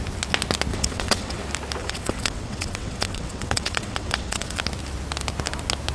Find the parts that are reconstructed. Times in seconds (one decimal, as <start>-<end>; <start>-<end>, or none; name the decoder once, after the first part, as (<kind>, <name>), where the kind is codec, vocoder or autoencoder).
0.7-1.4 (vocoder, WaveNeXt); 1.8-4.6